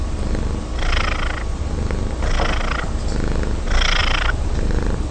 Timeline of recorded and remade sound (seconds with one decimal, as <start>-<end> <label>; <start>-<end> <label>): 0.0-4.0 recorded; 4.0-5.1 remade